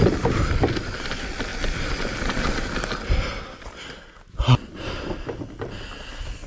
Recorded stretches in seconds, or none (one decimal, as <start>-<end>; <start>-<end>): 0.0-6.5